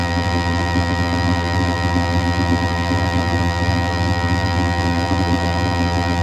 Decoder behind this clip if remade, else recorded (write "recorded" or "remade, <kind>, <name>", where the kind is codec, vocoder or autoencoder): remade, vocoder, BigVGAN v2